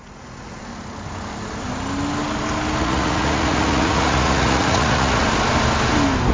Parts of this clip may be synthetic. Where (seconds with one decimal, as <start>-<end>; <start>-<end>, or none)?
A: 0.0-0.6; 2.8-5.2